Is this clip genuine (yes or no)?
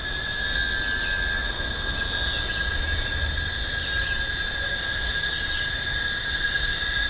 yes